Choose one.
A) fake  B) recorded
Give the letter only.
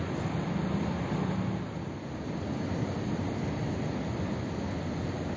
B